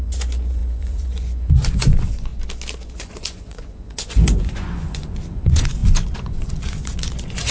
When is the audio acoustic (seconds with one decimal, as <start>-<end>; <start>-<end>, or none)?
2.3-2.9